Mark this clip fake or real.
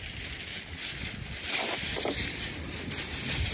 real